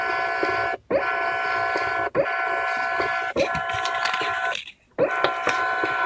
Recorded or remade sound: recorded